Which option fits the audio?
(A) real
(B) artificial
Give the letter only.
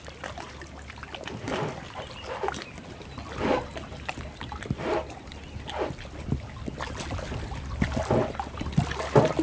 A